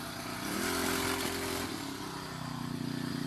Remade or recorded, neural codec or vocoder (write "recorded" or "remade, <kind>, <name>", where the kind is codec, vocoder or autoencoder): recorded